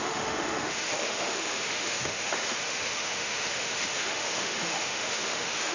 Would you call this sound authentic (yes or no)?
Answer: no